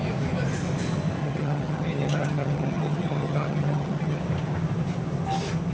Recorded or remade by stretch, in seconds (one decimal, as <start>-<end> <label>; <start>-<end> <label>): 0.0-1.2 recorded; 1.2-4.2 remade; 4.2-5.7 recorded